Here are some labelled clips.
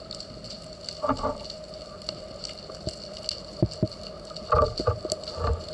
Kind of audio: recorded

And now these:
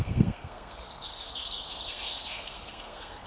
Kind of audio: remade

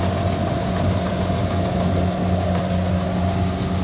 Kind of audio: recorded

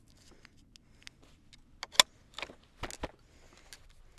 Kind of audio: recorded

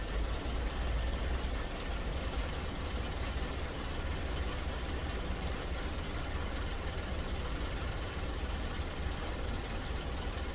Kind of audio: remade